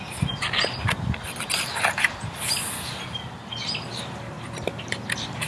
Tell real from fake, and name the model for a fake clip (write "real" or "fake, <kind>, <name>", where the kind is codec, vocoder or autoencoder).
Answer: real